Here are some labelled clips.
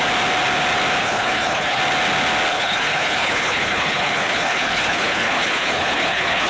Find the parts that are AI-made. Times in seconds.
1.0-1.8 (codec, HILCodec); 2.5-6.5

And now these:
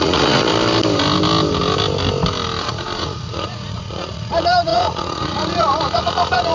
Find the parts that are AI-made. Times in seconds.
0.0-0.5 (vocoder, Vocos); 2.6-6.5

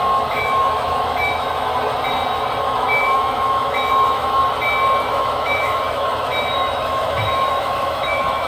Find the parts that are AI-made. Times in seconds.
0.0-1.7 (autoencoder, DAC-VAE); 2.6-4.4; 5.1-8.5

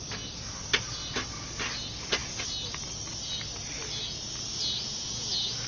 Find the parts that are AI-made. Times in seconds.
none

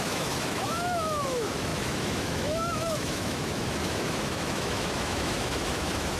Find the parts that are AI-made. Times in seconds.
0.0-6.2 (autoencoder, DAC-VAE)

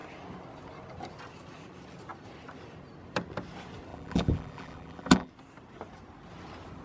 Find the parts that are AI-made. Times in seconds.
3.9-5.3 (vocoder, BigVGAN v2)

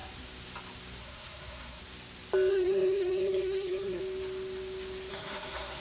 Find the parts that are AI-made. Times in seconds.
1.0-1.8 (codec, SNAC); 2.5-4.0; 5.1-5.8

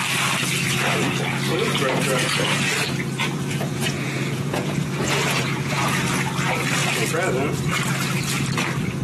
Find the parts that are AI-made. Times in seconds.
1.5-2.7 (vocoder, Vocos); 3.2-5.8